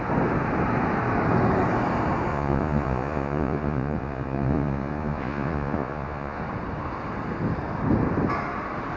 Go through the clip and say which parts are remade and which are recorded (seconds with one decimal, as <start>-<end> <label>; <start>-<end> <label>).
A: 0.0-2.3 recorded; 2.3-6.4 remade; 6.4-9.0 recorded